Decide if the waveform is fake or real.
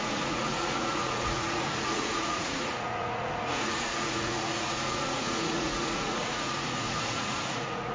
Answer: fake